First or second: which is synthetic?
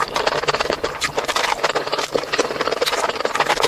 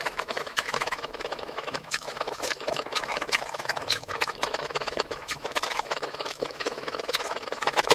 second